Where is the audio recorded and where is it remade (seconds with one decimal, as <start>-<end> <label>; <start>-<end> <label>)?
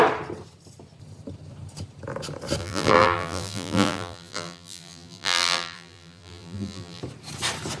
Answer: 0.0-2.6 recorded; 2.6-7.0 remade; 7.0-7.8 recorded